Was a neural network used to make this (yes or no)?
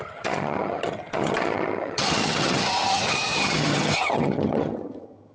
yes